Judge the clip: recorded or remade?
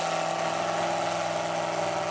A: recorded